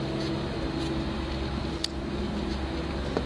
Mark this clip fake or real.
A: real